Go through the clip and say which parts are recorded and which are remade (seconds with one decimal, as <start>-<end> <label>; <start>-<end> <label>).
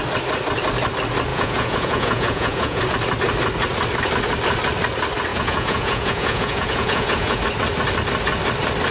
0.0-1.3 recorded; 1.3-2.8 remade; 2.8-5.3 recorded; 5.3-7.4 remade; 7.4-8.9 recorded